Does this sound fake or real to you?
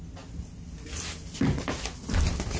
real